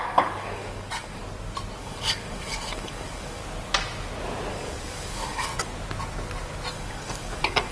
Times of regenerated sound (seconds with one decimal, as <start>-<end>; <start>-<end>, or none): 0.0-1.2; 1.8-3.4; 4.5-5.5; 6.7-7.7